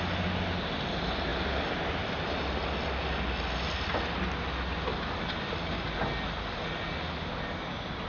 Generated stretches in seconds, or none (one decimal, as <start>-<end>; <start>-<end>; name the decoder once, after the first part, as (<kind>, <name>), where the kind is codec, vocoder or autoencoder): none